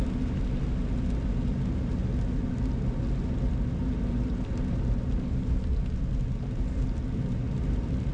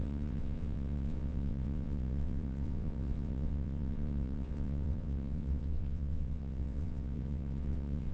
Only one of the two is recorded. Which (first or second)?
first